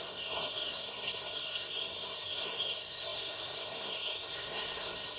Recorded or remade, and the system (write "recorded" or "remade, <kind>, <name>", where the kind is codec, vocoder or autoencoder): remade, codec, SNAC